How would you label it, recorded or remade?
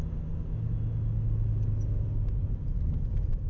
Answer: recorded